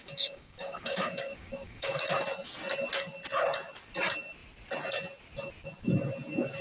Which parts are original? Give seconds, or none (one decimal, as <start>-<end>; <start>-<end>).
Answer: 2.0-6.6